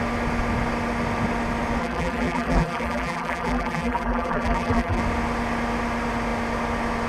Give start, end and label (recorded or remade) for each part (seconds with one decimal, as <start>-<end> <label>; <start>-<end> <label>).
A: 0.0-1.8 recorded; 1.8-5.0 remade; 5.0-7.1 recorded